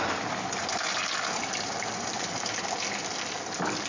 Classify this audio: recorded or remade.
recorded